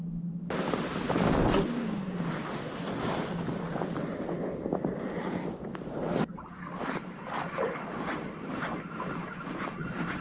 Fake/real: real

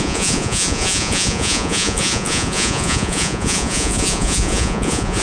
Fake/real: fake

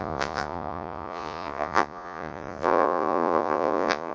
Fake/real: fake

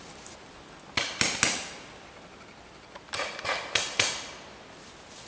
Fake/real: real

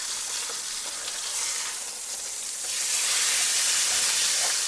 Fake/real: real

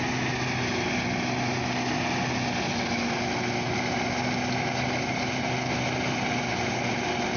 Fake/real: real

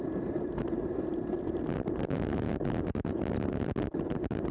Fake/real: fake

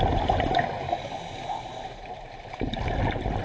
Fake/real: fake